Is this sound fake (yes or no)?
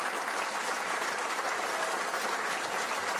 no